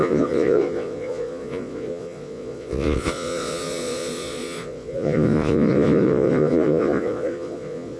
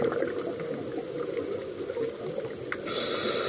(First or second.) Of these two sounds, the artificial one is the first